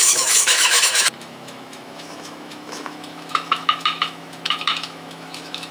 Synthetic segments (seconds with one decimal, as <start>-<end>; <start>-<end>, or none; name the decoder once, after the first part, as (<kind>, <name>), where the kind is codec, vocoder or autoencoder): 0.0-5.7 (autoencoder, DAC-VAE)